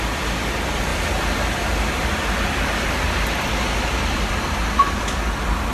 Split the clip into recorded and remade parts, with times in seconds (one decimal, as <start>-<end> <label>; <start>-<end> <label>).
0.0-5.7 recorded